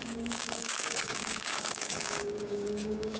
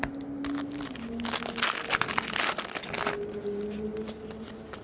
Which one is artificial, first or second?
first